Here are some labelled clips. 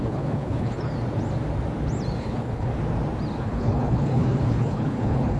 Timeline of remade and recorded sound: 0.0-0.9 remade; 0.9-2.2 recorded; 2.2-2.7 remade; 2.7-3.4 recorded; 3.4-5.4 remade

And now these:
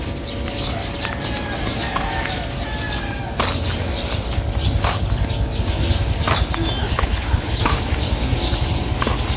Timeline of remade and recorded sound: 0.0-6.8 recorded; 6.8-7.6 remade; 7.6-9.4 recorded

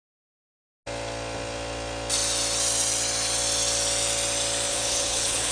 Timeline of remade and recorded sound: 0.0-4.7 recorded; 4.7-5.5 remade